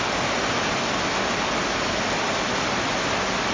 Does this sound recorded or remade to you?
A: recorded